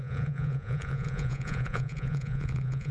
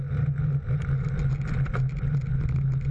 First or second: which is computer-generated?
first